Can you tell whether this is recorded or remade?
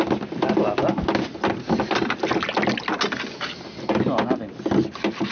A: recorded